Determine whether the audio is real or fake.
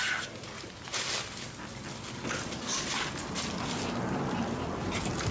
real